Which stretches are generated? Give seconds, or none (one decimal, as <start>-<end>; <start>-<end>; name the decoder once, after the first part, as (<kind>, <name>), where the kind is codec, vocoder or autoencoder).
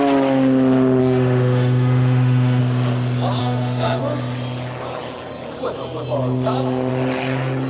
1.0-2.6 (autoencoder, DAC-VAE); 3.4-4.0